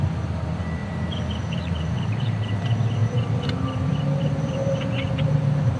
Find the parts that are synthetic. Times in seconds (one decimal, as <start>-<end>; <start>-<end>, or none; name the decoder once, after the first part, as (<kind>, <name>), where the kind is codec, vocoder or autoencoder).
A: 0.8-2.6 (vocoder, BigVGAN v2); 3.0-5.8